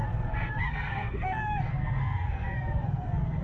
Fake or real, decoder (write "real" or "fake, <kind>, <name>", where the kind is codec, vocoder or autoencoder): fake, codec, SNAC